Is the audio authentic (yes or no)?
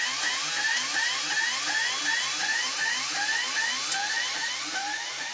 yes